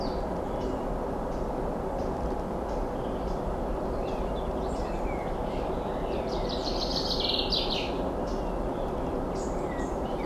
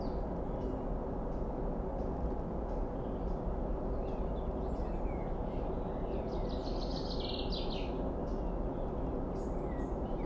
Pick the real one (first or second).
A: second